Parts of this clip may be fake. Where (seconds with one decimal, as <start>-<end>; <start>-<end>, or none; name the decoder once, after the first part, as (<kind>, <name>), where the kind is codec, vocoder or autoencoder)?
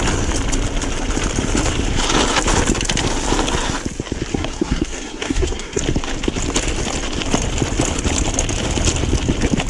4.3-5.8 (codec, SNAC)